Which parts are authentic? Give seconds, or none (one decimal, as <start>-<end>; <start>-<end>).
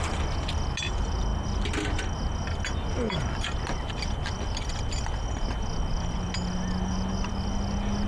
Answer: 0.0-8.1